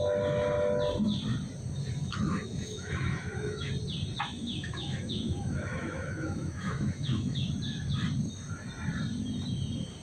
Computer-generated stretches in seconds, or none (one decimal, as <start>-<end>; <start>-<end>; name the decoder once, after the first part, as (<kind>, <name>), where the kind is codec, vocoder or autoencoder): 2.0-3.7 (autoencoder, DAC-VAE); 4.4-7.5